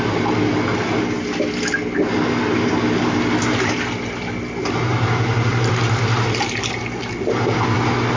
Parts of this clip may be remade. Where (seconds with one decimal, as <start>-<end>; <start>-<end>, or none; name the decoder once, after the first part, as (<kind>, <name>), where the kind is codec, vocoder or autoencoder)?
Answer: none